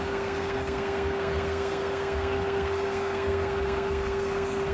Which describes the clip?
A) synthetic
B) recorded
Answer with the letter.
A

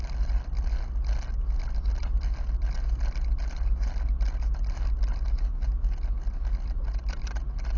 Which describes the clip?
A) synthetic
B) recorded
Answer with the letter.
B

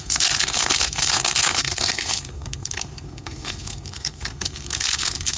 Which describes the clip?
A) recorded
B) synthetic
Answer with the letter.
B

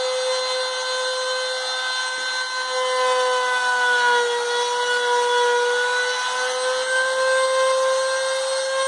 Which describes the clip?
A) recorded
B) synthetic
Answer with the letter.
A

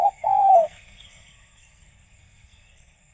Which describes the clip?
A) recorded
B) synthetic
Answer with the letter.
B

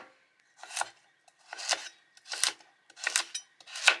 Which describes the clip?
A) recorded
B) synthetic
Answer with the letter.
A